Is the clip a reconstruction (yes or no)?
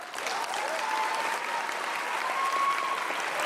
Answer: no